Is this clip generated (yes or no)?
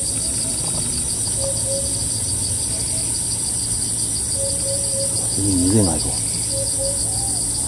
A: no